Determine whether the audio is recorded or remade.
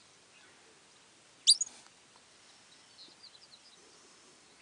recorded